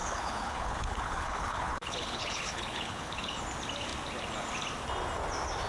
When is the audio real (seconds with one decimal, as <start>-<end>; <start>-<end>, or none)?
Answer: 3.4-5.7